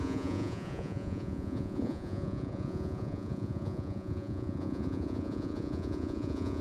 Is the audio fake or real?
fake